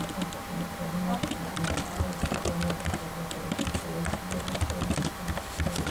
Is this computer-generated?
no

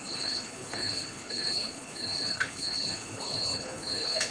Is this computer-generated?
yes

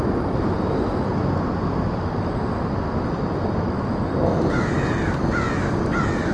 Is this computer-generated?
no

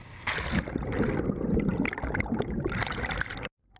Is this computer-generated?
no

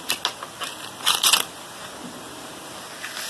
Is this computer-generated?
no